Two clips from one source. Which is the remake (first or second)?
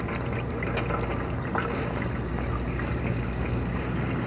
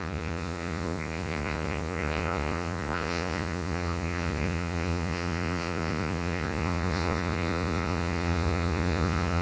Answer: second